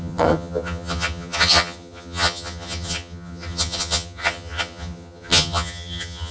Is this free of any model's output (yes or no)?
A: no